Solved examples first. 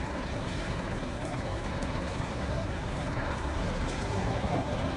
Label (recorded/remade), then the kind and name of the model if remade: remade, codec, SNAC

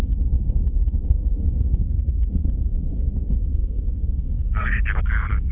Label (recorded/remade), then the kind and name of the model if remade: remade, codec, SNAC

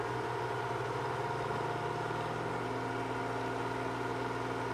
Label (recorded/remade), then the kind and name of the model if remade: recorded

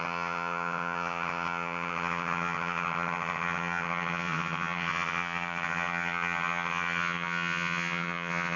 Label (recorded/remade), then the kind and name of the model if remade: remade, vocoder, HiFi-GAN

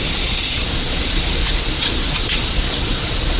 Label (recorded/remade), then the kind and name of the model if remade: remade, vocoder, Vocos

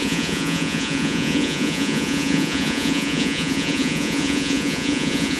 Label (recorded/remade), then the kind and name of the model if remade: remade, vocoder, Vocos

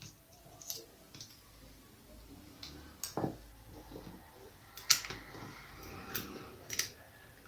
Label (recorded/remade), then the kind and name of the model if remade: recorded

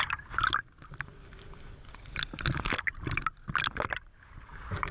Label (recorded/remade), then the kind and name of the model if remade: recorded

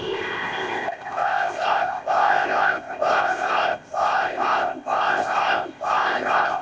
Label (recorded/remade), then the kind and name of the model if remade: remade, codec, ZipCodec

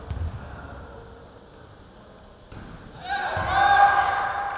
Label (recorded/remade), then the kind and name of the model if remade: recorded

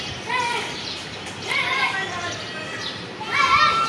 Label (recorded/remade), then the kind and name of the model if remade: recorded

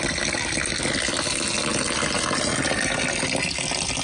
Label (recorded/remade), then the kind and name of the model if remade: recorded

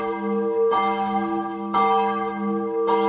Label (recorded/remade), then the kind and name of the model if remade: remade, autoencoder, DAC-VAE